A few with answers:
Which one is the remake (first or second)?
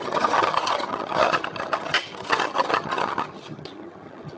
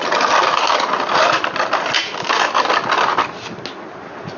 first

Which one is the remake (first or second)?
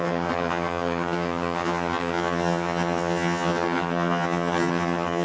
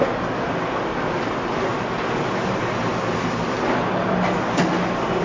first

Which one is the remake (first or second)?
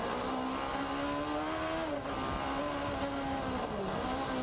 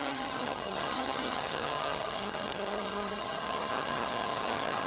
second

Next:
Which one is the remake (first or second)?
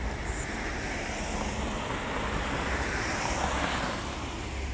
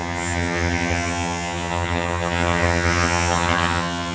second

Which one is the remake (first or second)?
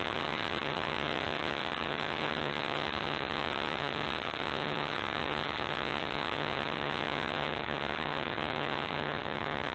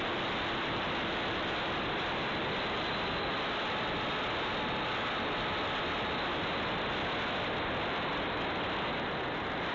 first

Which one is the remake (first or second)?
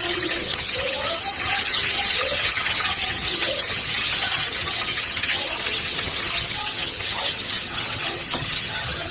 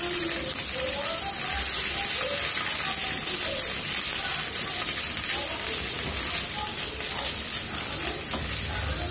first